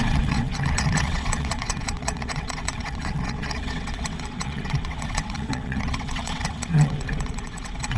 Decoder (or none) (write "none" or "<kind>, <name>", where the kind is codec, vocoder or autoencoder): vocoder, WaveNeXt